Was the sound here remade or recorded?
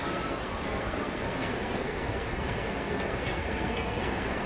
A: remade